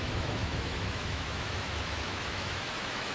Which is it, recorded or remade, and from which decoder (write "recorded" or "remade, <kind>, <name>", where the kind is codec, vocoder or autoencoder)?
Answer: remade, autoencoder, DAC-VAE